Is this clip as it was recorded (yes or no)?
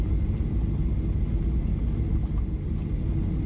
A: yes